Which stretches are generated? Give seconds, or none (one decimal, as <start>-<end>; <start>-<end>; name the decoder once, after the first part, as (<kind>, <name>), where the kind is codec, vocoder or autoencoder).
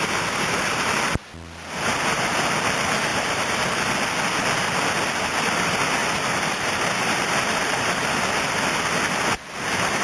3.1-3.6 (vocoder, BigVGAN v2); 6.0-8.1